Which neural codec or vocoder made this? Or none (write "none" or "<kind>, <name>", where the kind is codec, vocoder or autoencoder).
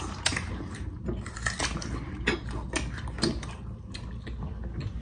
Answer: none